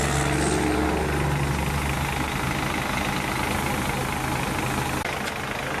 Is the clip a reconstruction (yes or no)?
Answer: no